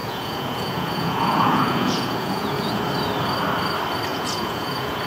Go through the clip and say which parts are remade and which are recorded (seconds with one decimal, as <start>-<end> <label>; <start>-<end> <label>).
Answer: 0.0-2.8 remade; 2.8-4.1 recorded; 4.1-5.1 remade